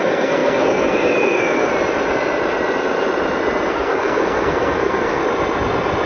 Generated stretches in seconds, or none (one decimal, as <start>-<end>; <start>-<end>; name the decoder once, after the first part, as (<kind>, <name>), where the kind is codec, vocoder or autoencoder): 0.0-1.7 (codec, SNAC); 3.7-5.2